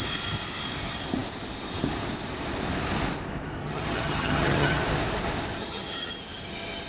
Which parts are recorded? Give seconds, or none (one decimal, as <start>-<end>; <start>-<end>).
0.0-3.6; 4.8-5.6; 6.1-6.9